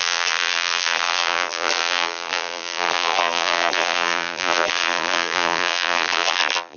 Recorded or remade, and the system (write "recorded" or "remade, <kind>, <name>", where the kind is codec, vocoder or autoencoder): remade, vocoder, BigVGAN v2